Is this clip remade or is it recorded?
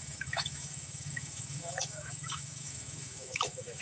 remade